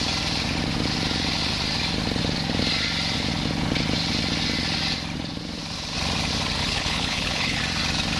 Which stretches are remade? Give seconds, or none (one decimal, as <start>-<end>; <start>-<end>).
6.6-7.6